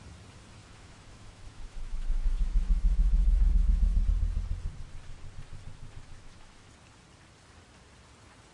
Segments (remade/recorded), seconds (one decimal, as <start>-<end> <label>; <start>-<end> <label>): 0.0-0.6 recorded; 0.6-4.0 remade; 4.0-5.7 recorded; 5.7-6.7 remade; 6.7-8.5 recorded